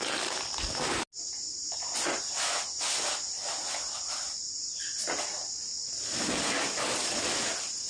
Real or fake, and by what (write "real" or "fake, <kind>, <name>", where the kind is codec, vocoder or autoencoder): real